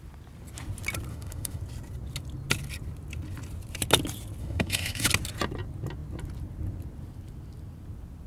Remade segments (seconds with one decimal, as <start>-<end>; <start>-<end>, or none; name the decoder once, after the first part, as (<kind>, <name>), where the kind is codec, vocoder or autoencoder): 1.1-1.6 (autoencoder, DAC-VAE); 4.4-5.1